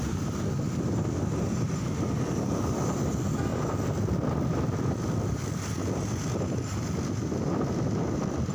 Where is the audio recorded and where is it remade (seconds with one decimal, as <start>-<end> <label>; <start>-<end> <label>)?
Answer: 0.0-8.5 recorded